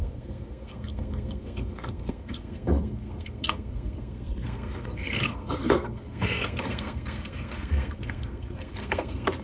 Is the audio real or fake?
fake